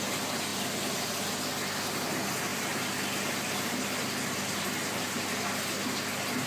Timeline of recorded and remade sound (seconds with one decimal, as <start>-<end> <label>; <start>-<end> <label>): 0.0-6.5 recorded